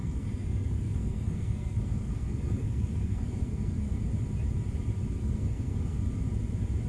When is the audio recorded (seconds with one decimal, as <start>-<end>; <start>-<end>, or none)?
4.1-5.2; 6.0-6.9